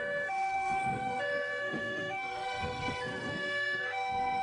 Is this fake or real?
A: fake